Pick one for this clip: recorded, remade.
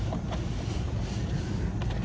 recorded